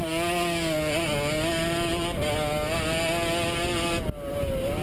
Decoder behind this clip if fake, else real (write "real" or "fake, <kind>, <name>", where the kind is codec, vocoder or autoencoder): real